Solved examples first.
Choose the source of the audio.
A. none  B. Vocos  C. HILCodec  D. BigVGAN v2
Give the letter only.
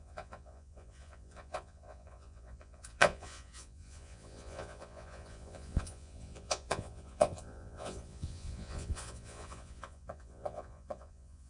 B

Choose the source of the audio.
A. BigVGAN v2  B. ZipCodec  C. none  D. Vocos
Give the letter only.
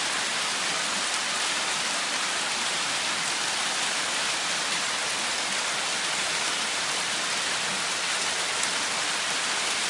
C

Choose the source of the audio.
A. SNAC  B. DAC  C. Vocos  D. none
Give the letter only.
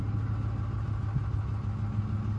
D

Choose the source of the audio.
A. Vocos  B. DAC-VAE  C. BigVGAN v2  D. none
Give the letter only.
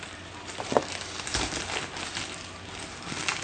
D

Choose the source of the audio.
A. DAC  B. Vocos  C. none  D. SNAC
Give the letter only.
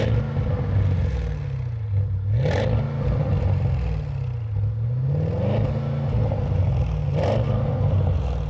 C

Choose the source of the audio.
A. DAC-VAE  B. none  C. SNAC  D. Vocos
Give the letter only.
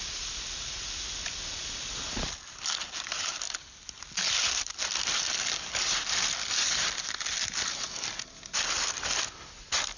B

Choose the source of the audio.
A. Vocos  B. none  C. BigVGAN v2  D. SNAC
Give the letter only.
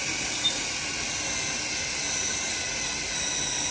B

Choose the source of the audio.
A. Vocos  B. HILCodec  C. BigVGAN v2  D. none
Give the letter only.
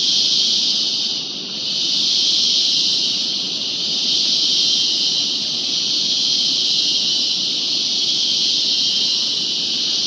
D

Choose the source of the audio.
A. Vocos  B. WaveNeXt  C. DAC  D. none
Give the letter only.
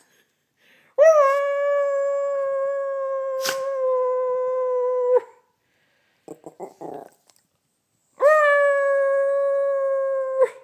D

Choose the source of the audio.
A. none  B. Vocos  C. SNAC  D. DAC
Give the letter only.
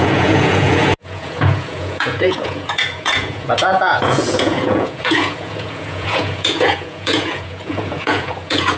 B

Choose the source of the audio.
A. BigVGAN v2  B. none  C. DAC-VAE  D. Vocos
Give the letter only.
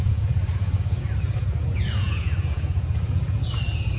D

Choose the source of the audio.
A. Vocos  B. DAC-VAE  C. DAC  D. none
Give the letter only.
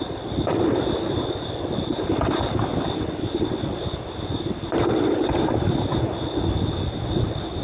D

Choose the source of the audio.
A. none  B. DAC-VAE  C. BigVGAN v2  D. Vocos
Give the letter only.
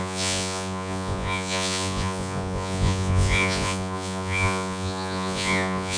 D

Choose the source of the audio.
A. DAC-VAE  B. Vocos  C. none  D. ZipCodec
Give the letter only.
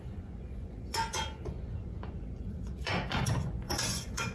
B